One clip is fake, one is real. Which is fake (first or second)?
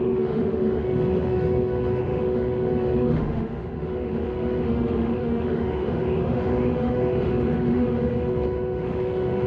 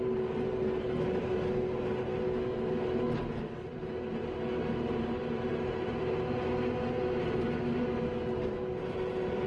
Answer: first